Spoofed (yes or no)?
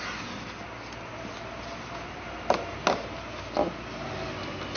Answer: no